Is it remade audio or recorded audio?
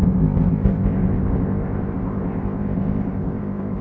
remade